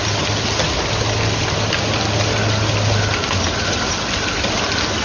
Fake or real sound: real